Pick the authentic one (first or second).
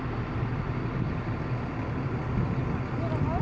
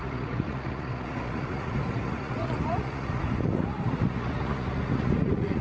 first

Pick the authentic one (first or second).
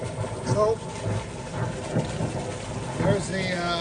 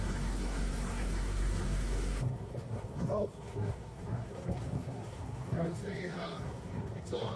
first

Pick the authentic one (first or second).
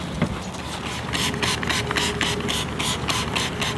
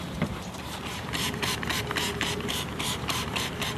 first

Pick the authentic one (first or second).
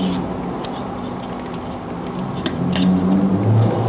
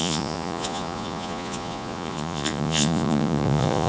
first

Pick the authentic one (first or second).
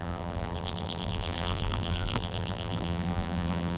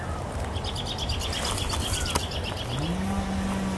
second